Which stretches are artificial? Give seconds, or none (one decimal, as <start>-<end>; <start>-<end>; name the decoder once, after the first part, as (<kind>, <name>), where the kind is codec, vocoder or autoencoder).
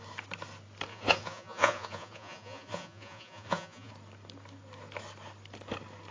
0.9-3.9 (vocoder, Vocos)